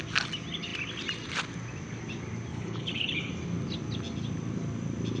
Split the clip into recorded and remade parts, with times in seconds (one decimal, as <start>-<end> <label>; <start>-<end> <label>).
0.0-2.5 recorded; 2.5-3.3 remade; 3.3-5.2 recorded

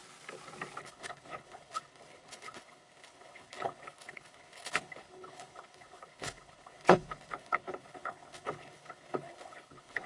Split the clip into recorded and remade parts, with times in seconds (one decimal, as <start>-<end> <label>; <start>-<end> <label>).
0.0-0.8 recorded; 0.8-10.1 remade